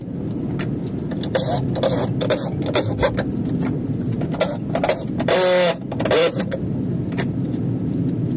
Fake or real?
real